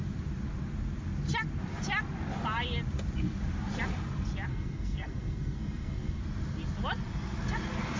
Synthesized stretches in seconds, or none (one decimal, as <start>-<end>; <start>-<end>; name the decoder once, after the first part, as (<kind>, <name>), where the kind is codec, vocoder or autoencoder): 4.5-6.2 (codec, SNAC)